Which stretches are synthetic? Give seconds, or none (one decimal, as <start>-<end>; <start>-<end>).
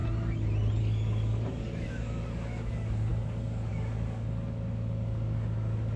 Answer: 0.8-6.0